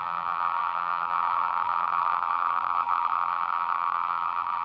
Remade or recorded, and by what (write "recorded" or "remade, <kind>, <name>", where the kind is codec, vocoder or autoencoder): remade, vocoder, BigVGAN v2